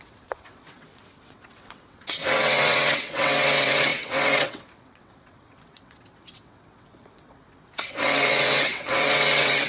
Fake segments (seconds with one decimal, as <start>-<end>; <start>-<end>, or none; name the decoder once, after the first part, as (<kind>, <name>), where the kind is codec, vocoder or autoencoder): 0.0-9.7 (vocoder, WaveNeXt)